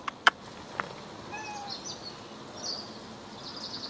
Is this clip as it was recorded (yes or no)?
yes